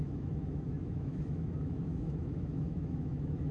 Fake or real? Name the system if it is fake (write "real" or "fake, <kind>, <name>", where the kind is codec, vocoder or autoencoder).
fake, autoencoder, DAC-VAE